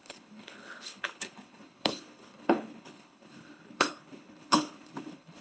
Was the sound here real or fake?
fake